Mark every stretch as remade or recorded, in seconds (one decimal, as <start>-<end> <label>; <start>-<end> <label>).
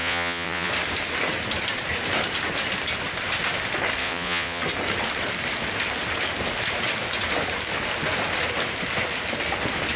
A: 0.0-0.7 remade; 0.7-4.0 recorded; 4.0-4.6 remade; 4.6-10.0 recorded